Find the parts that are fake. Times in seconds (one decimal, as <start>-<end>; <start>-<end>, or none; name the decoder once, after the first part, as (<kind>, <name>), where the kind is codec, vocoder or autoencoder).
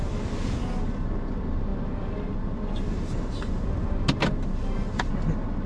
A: none